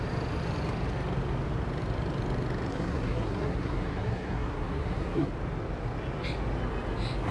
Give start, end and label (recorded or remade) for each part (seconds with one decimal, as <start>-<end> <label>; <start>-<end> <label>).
0.0-2.7 recorded; 2.7-5.3 remade; 5.3-7.3 recorded